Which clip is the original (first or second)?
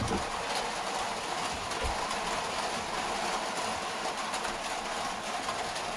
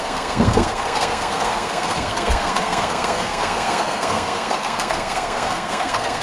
first